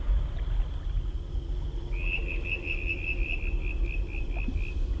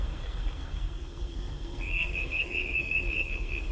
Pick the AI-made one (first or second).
second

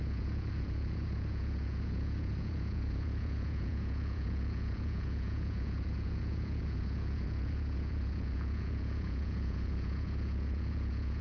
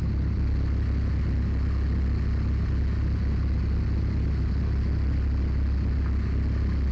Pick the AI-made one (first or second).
first